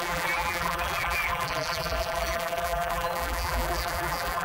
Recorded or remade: remade